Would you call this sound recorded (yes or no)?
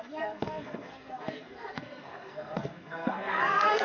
no